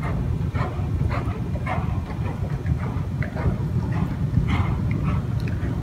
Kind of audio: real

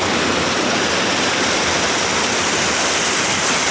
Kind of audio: real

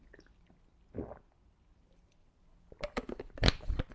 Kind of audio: real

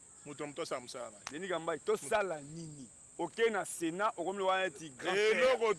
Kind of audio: real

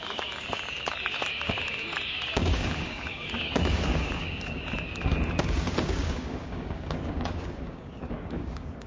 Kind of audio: fake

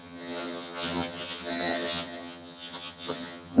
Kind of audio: fake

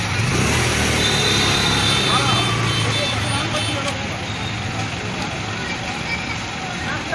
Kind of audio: real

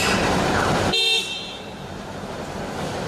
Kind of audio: fake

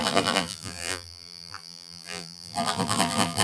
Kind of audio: fake